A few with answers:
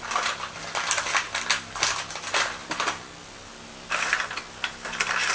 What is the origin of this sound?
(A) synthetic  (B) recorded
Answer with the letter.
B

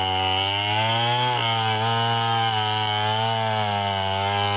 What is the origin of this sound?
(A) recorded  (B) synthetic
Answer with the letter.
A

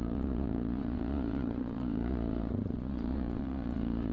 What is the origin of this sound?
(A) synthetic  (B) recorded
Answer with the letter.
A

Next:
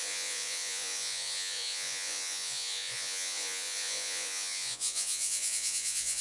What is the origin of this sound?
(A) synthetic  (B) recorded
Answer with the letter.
A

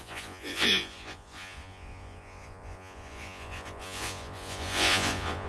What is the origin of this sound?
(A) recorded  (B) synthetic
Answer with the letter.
B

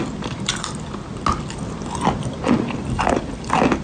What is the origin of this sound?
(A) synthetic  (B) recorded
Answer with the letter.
B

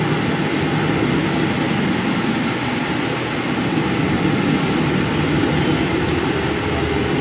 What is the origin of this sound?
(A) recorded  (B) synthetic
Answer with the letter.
A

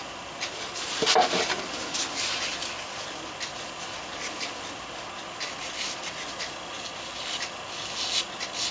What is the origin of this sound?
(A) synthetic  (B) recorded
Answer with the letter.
B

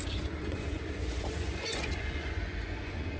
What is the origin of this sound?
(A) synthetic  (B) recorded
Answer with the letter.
A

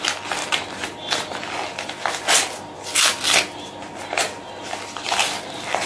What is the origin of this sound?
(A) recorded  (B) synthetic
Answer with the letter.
A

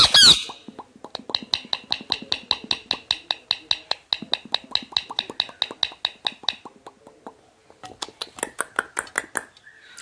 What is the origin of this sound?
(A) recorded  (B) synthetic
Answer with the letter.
A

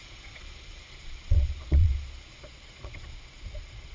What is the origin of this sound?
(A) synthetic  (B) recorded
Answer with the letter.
A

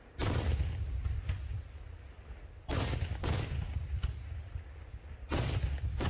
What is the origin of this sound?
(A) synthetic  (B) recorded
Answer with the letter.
B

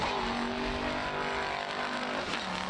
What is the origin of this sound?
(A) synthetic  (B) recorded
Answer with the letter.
B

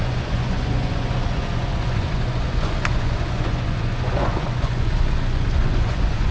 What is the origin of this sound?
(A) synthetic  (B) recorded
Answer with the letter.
A